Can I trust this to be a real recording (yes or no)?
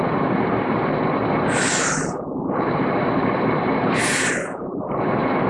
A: no